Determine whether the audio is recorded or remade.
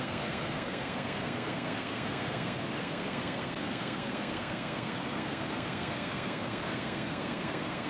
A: remade